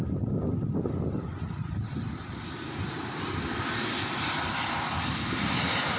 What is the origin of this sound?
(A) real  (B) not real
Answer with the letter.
A